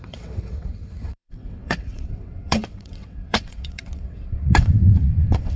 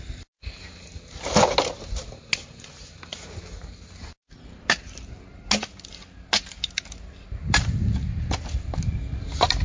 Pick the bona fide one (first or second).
second